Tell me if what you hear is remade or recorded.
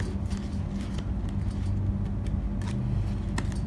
recorded